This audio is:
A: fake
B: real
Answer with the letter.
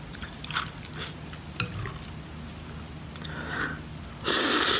B